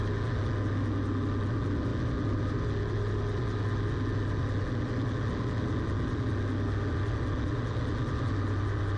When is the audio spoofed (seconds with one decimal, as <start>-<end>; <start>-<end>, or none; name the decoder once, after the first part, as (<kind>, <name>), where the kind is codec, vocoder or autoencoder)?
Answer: none